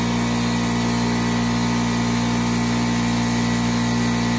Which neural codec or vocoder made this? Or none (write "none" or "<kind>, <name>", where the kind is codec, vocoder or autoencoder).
none